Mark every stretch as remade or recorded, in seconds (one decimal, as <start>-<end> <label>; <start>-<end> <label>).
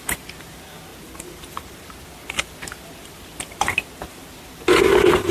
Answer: 0.0-5.3 recorded